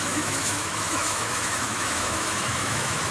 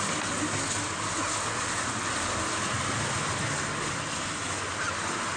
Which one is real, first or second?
second